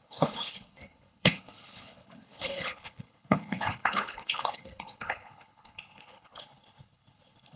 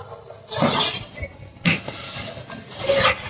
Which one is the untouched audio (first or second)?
second